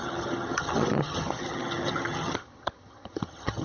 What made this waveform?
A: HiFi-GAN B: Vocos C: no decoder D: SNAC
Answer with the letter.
A